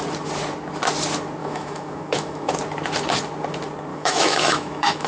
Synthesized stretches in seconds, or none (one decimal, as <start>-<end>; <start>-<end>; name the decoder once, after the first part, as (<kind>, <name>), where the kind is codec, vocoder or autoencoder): 1.4-2.5 (autoencoder, DAC-VAE); 3.9-5.1